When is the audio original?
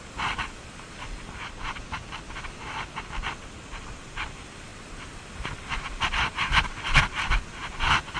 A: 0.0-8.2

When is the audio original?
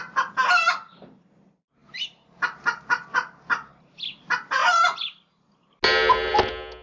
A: 0.0-6.8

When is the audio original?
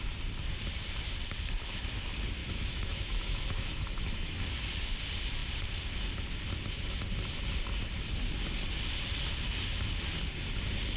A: 0.0-2.4; 4.4-11.0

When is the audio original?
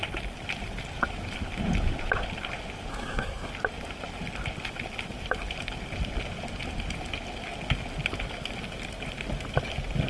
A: 0.0-2.9; 3.5-10.1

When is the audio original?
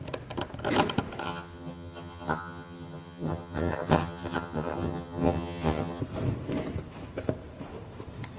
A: 0.0-1.2; 6.0-8.4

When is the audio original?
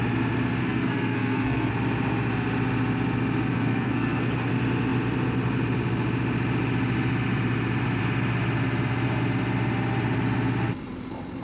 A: 0.0-0.6; 1.7-3.5; 4.5-11.4